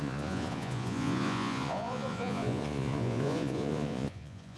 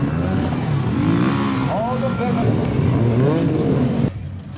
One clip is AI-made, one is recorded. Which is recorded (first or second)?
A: second